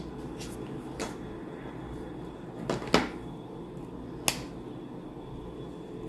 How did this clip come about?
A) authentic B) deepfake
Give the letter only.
A